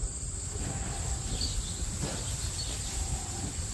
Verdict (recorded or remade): recorded